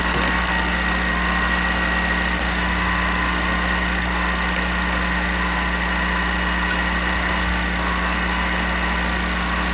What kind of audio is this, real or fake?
real